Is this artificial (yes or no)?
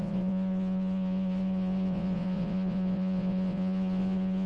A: yes